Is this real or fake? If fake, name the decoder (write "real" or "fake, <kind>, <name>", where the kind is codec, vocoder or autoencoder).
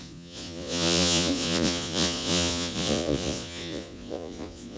fake, vocoder, Vocos